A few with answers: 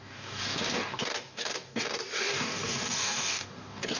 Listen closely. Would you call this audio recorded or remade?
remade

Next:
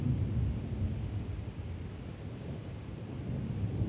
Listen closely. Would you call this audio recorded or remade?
recorded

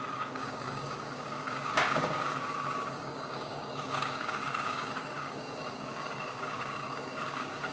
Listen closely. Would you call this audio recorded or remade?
remade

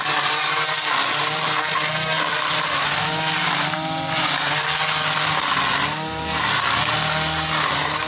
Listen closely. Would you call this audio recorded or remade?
recorded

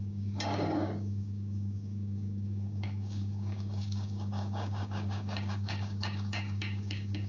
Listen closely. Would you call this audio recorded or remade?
remade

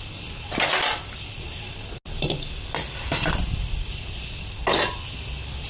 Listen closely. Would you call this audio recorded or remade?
recorded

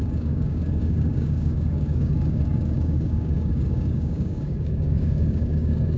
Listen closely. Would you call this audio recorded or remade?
remade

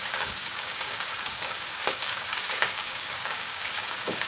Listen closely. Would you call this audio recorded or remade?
remade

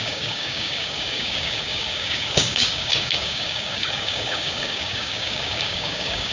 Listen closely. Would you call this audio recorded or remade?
remade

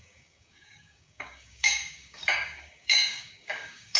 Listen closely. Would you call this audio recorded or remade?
remade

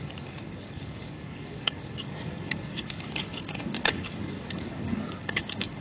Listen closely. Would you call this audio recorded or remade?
remade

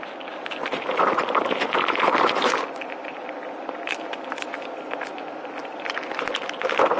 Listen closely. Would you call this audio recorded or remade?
recorded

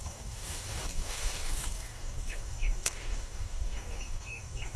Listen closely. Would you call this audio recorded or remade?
remade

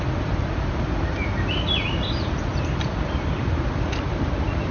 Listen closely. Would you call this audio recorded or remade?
recorded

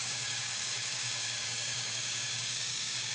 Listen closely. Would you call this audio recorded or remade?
remade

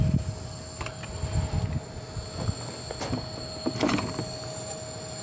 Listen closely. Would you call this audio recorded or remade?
recorded